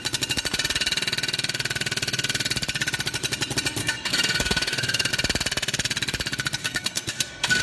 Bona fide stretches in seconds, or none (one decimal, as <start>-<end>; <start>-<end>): 0.0-3.8; 5.1-6.6